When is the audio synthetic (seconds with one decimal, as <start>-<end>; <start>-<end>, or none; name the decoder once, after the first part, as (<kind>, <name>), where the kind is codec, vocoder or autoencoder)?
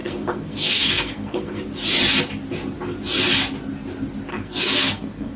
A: 0.0-1.6 (codec, SNAC); 4.3-5.4